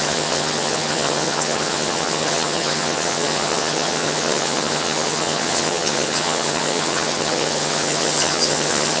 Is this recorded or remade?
remade